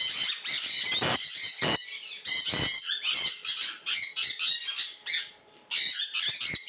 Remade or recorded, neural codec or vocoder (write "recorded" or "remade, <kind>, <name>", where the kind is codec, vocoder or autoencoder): recorded